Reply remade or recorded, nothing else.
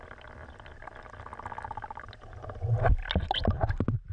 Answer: recorded